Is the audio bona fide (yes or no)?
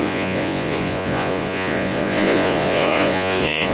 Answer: no